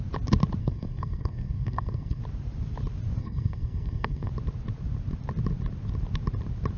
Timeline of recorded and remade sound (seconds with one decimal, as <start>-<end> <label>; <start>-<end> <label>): 0.0-0.6 recorded; 0.6-2.2 remade; 2.2-3.2 recorded; 3.2-4.3 remade; 4.3-6.8 recorded